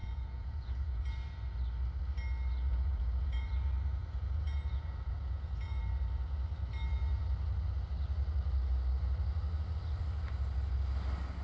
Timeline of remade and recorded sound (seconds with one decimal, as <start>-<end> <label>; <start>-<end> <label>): 0.0-1.0 remade; 1.0-2.7 recorded; 2.7-3.5 remade; 3.5-4.0 recorded; 4.0-5.8 remade; 5.8-11.4 recorded